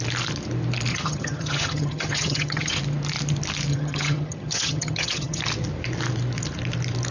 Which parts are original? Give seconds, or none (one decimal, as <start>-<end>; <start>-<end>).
0.0-0.9; 2.8-3.7; 5.4-7.1